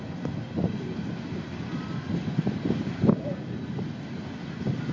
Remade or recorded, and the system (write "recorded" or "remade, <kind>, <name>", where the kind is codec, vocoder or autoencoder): recorded